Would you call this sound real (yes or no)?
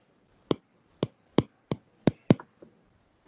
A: yes